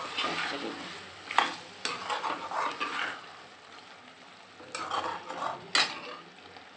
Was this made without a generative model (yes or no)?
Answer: yes